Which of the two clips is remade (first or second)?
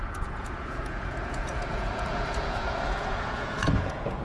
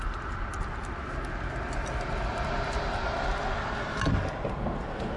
first